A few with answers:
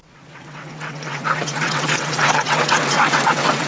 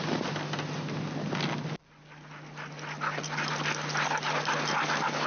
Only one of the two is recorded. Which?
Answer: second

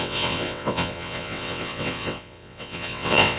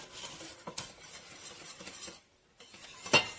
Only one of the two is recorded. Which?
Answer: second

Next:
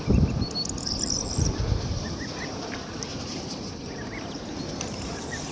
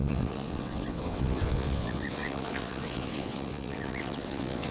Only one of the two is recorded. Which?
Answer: first